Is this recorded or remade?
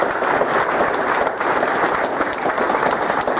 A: recorded